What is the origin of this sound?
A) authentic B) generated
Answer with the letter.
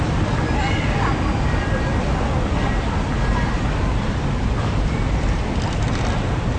A